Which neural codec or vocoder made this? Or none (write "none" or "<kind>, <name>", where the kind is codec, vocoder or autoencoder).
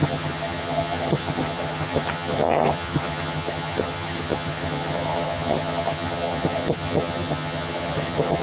vocoder, HiFi-GAN